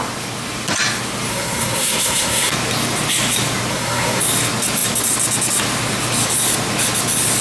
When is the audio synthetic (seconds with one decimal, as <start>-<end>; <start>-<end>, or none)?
1.3-2.5; 3.7-4.2